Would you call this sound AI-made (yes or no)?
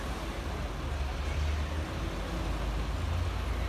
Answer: no